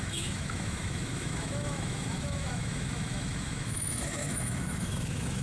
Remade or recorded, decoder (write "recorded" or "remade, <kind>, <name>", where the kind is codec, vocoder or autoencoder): remade, autoencoder, DAC-VAE